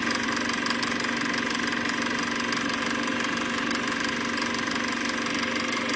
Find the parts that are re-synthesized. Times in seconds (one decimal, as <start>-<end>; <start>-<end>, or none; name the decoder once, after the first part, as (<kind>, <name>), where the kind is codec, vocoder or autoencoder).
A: none